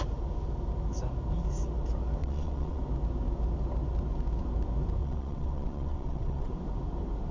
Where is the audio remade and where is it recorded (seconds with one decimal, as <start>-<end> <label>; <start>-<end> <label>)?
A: 0.0-2.2 recorded; 2.2-2.8 remade; 2.8-5.0 recorded; 5.0-6.5 remade; 6.5-7.3 recorded